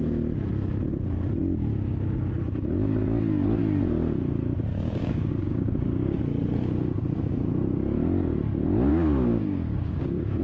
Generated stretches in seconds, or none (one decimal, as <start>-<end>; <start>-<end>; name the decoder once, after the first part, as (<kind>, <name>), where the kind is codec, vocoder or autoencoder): 4.7-6.2 (codec, DAC); 8.9-10.4